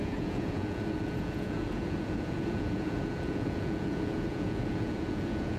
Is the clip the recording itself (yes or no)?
no